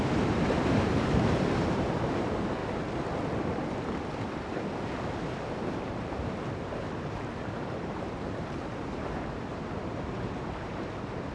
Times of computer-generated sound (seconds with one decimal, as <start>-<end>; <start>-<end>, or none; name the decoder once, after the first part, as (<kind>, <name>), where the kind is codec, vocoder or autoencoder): 0.0-2.6 (vocoder, BigVGAN v2); 5.5-11.3